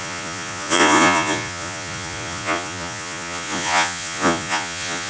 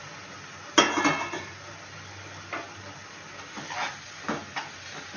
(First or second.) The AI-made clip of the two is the first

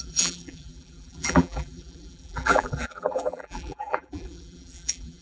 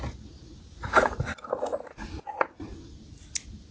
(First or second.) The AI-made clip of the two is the first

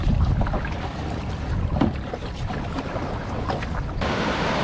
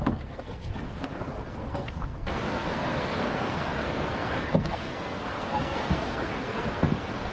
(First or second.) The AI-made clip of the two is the second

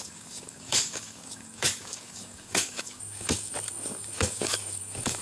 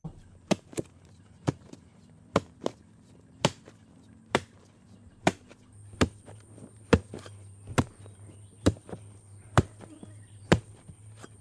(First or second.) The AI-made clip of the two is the first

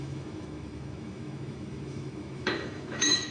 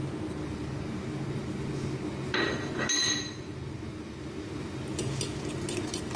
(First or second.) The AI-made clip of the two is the first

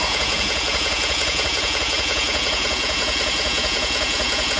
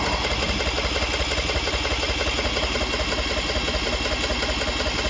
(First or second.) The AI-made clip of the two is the first